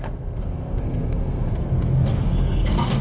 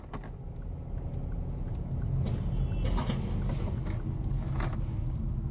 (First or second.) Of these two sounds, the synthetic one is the first